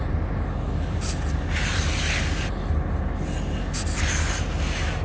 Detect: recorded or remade recorded